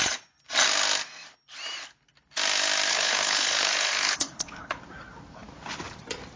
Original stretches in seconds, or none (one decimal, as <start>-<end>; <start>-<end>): 0.0-2.9; 4.8-6.4